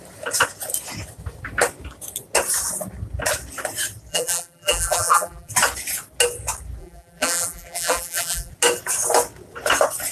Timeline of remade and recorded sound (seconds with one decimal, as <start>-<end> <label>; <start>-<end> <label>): 0.0-4.1 recorded; 4.1-5.5 remade; 5.5-6.8 recorded; 6.8-8.5 remade; 8.5-10.1 recorded